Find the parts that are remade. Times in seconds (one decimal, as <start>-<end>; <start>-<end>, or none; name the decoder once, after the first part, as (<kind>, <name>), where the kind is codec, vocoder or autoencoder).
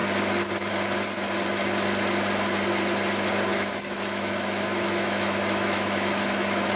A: 3.5-6.8 (autoencoder, DAC-VAE)